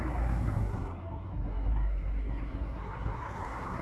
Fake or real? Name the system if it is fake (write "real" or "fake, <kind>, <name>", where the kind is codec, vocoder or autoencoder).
fake, codec, SNAC